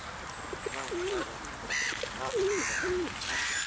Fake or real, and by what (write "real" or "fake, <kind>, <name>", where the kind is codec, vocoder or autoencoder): real